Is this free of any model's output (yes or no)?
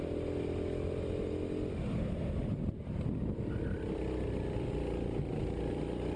yes